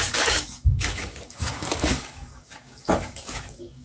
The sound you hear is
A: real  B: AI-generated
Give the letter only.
B